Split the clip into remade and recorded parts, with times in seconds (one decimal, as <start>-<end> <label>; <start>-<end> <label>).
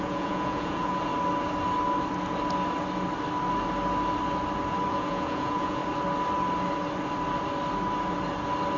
0.0-1.1 remade; 1.1-4.9 recorded; 4.9-5.8 remade; 5.8-8.8 recorded